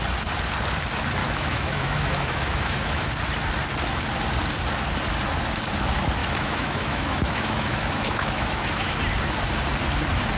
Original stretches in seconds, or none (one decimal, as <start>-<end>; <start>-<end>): 0.0-1.2; 3.1-6.2; 9.0-10.4